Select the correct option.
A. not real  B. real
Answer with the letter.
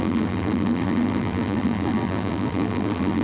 A